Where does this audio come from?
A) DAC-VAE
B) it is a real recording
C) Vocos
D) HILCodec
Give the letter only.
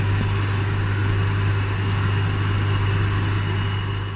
B